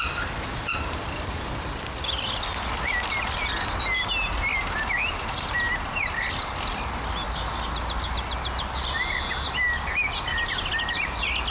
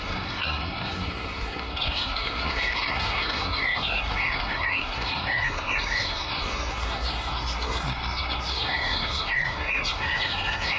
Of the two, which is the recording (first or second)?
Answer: first